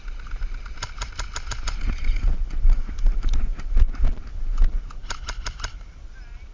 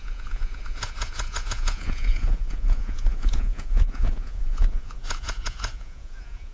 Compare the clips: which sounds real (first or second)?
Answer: first